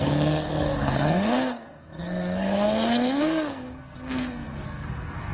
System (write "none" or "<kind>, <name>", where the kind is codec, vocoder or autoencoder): codec, SNAC